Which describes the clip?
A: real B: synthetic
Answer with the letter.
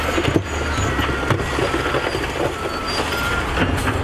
A